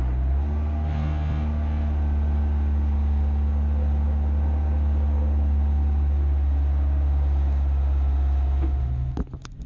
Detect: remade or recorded recorded